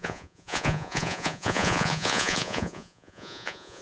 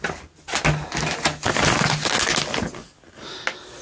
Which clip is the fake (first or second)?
first